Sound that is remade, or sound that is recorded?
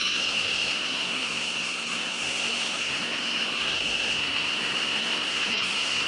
remade